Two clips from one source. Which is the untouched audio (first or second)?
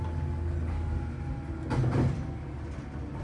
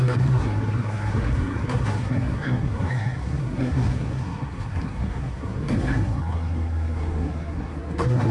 first